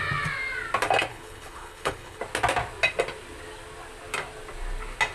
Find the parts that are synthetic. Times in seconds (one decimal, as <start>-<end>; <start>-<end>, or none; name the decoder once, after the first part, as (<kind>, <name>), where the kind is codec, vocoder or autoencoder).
1.1-2.2 (codec, HILCodec)